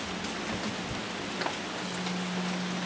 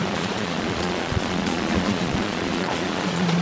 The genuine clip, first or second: first